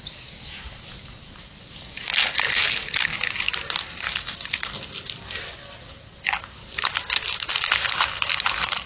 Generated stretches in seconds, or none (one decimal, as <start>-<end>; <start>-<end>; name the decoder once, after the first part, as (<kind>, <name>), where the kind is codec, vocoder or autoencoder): none